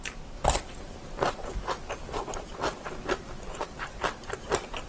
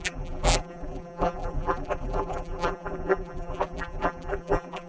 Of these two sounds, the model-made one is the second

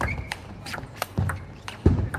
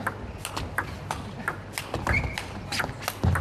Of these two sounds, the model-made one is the first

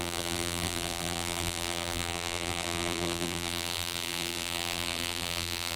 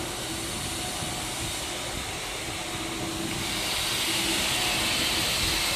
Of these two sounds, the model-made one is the first